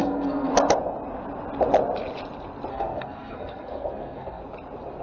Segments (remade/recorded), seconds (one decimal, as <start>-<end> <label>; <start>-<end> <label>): 0.0-0.5 remade; 0.5-2.7 recorded; 2.7-4.4 remade; 4.4-5.0 recorded